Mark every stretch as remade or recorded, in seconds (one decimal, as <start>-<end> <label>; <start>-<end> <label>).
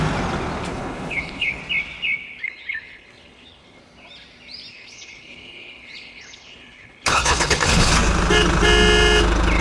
0.0-0.7 recorded; 0.7-1.6 remade; 1.6-2.4 recorded; 2.4-3.8 remade; 3.8-4.7 recorded; 4.7-7.9 remade; 7.9-9.6 recorded